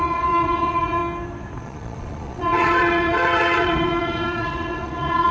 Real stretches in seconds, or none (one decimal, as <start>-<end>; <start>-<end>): 1.0-1.6